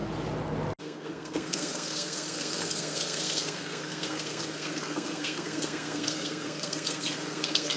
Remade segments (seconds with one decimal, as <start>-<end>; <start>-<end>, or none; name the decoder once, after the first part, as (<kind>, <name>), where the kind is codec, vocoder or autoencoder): 0.8-7.8 (codec, SNAC)